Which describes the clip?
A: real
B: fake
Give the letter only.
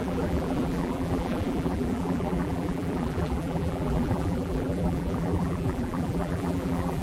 B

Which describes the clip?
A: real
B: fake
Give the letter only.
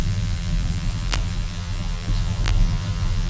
B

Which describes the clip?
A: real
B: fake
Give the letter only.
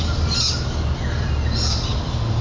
A